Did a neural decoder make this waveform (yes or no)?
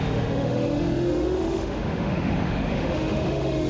yes